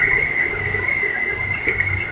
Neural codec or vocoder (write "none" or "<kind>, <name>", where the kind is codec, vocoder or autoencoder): codec, DAC